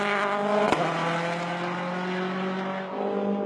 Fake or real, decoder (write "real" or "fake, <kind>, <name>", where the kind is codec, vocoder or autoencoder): real